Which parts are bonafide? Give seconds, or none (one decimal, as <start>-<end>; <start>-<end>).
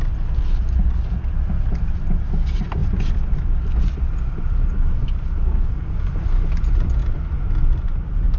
0.0-5.4; 5.9-8.4